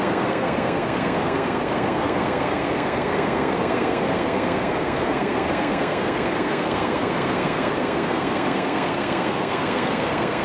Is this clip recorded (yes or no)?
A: no